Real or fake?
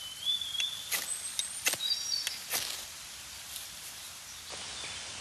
real